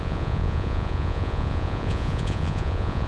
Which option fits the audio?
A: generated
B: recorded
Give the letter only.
A